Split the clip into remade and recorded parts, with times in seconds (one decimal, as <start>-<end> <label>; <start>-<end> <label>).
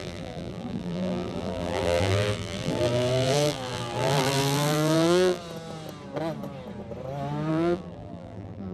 0.0-5.4 remade; 5.4-7.5 recorded; 7.5-8.7 remade